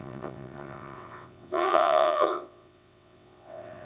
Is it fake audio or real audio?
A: fake